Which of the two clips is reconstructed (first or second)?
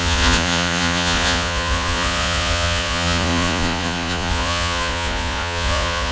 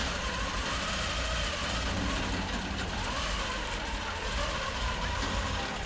first